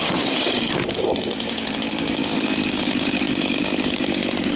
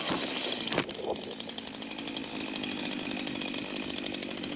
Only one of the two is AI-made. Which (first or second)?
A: first